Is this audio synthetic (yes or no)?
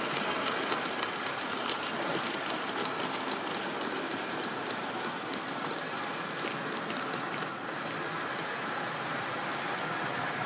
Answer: no